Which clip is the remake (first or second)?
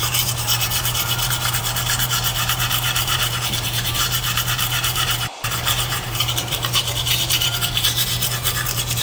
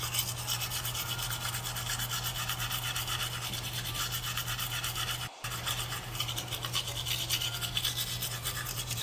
first